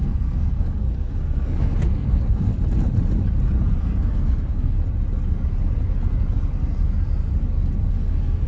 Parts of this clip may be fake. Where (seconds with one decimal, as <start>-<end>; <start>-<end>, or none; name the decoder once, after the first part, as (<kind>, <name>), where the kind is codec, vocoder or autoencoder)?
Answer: 0.0-2.5 (codec, SNAC); 3.8-4.8; 7.9-8.5